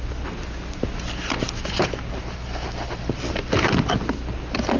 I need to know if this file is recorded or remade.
recorded